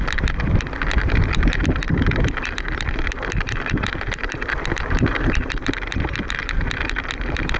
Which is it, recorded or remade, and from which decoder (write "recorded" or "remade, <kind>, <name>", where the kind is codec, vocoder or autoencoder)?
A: recorded